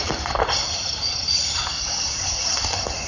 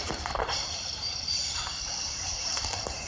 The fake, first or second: second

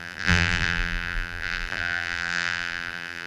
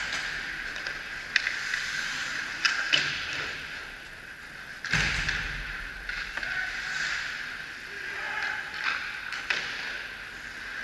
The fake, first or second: first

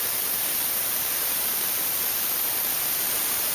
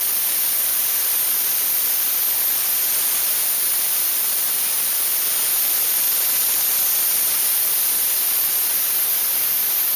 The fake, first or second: first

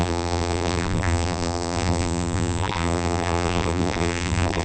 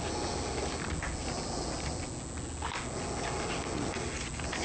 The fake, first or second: first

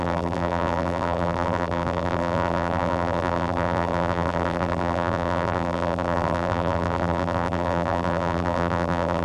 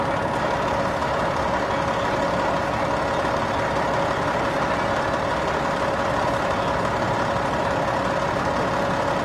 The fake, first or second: first